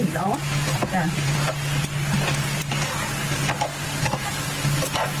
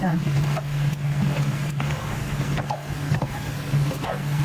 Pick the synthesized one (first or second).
second